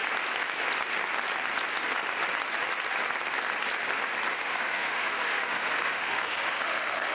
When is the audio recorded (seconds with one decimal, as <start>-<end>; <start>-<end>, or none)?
0.0-4.3